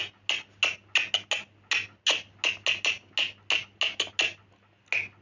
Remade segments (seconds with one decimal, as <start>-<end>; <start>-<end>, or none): none